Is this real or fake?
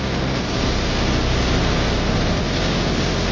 real